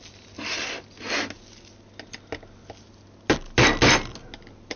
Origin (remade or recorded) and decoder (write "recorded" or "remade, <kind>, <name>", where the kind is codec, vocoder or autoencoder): recorded